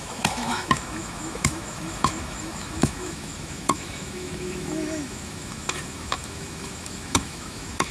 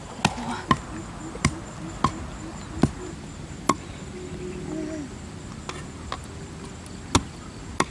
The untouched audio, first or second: second